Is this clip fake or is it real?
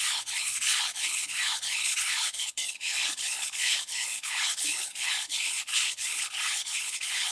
fake